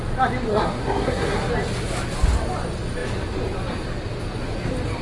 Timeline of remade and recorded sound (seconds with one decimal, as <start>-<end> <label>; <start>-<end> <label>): 0.0-0.5 recorded; 0.5-1.5 remade; 1.5-5.0 recorded